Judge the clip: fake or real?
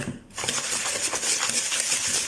real